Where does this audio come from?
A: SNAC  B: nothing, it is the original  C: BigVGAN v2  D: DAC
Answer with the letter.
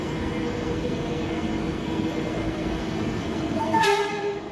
A